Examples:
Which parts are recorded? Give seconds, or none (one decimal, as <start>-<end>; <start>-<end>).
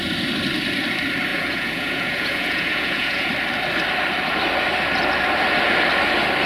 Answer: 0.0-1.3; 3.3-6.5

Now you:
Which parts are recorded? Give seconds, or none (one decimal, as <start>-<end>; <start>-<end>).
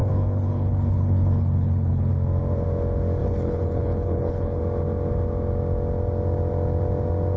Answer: 2.1-3.2; 4.6-7.4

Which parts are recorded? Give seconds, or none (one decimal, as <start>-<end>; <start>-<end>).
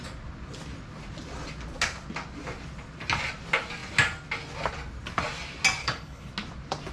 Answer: 0.0-5.8; 6.3-6.9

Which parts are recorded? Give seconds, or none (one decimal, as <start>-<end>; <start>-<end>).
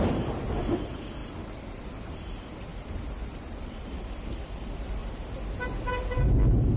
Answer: 5.0-6.8